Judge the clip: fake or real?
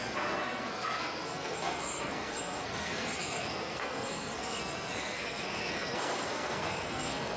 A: fake